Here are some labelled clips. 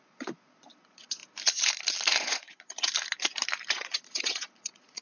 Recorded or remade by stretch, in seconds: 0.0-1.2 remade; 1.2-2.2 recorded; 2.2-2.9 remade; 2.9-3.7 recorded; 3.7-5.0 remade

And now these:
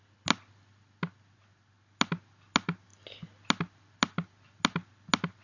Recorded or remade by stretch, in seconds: 0.0-5.4 recorded

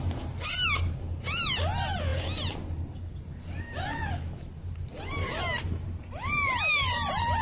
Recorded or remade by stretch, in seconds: 0.0-7.4 recorded

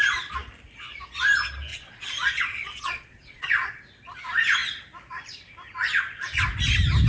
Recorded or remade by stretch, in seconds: 0.0-1.7 recorded; 1.7-3.8 remade; 3.8-7.1 recorded

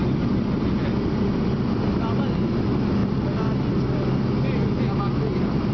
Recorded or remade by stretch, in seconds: 0.0-5.7 recorded

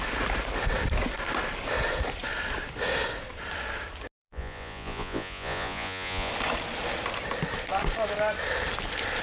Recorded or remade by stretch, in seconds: 0.0-4.2 recorded; 4.2-6.3 remade; 6.3-9.2 recorded